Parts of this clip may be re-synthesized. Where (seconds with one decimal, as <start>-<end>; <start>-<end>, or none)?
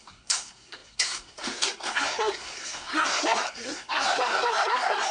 0.0-5.1